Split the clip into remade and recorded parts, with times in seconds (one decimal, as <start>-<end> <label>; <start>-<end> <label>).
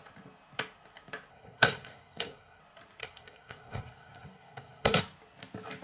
0.0-1.3 recorded; 1.3-2.6 remade; 2.6-3.0 recorded; 3.0-5.0 remade; 5.0-5.8 recorded